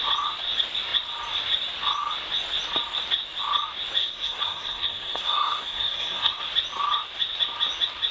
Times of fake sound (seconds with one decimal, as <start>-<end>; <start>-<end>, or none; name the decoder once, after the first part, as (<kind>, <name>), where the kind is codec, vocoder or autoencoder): 4.0-6.4 (codec, SNAC)